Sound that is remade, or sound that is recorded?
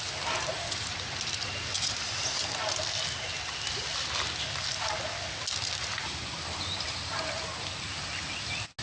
recorded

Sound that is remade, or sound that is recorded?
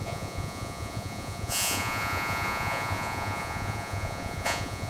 remade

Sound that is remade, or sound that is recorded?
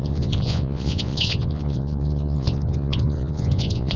remade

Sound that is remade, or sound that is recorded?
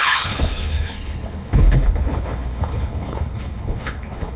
remade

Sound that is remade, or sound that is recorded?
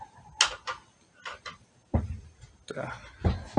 recorded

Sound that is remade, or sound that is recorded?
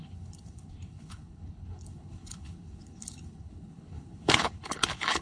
remade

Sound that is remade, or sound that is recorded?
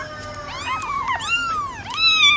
recorded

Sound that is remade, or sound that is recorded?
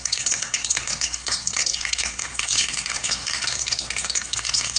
remade